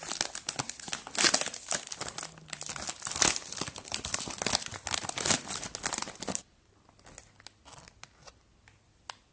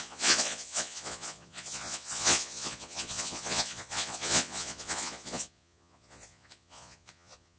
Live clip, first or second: first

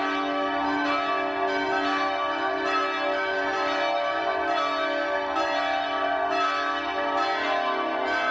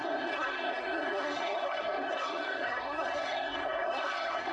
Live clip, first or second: first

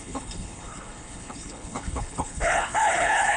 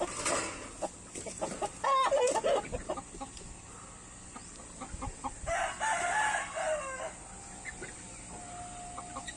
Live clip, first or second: second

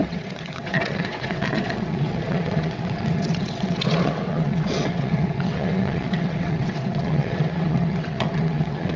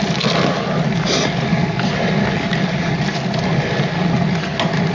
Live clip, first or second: second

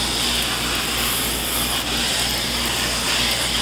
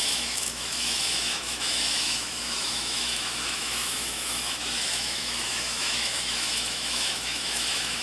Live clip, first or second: first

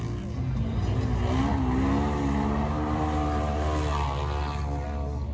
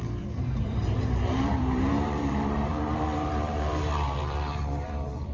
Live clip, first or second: first